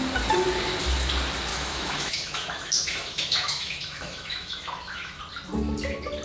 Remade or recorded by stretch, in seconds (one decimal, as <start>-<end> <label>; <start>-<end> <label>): 0.0-1.5 recorded; 1.5-5.2 remade; 5.2-6.2 recorded